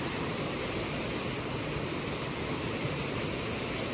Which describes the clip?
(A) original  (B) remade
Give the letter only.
A